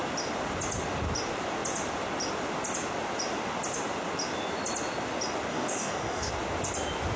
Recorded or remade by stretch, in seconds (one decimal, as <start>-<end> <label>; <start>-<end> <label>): 0.0-5.5 recorded; 5.5-6.3 remade; 6.3-7.2 recorded